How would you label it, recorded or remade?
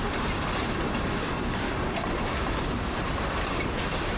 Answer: remade